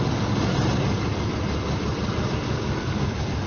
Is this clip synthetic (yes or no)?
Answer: no